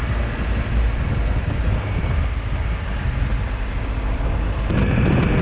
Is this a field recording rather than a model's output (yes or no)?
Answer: yes